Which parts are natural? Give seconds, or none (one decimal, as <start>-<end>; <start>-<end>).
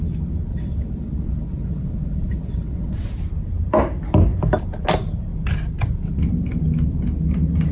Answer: 0.0-0.5; 3.1-7.7